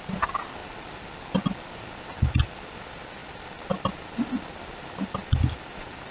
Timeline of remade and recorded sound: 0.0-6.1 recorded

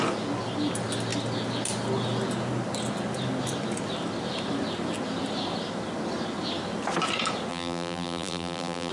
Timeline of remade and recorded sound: 0.0-7.5 recorded; 7.5-8.9 remade